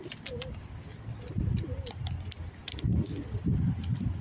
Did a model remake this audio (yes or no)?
no